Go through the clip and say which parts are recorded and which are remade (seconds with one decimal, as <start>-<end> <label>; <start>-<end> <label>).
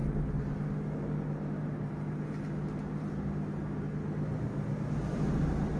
0.0-5.8 recorded